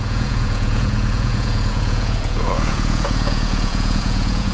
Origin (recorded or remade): remade